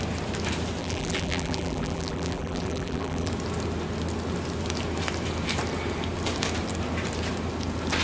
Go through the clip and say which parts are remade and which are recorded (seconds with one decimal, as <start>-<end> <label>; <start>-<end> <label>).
0.0-0.8 recorded; 0.8-3.3 remade; 3.3-8.0 recorded